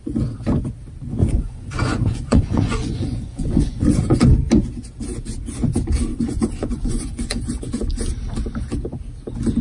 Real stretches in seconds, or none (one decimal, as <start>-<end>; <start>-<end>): 0.0-1.2; 4.2-6.1; 7.6-9.6